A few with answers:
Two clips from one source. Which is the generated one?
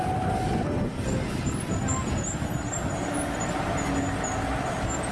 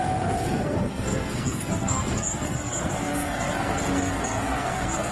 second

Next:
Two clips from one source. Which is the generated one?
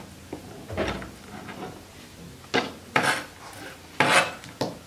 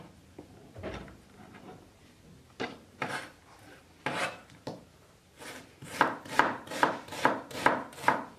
second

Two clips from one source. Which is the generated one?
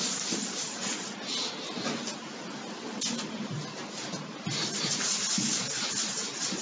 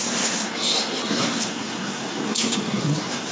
second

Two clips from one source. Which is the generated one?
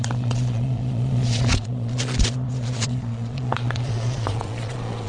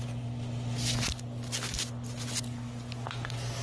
first